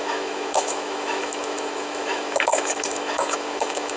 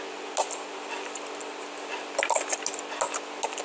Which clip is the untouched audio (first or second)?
second